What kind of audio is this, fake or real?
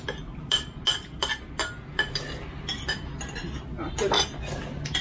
real